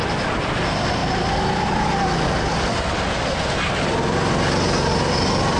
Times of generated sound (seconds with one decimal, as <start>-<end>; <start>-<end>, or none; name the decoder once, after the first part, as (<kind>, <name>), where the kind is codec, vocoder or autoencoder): none